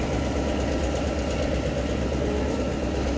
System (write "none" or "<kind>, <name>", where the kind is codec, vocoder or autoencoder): none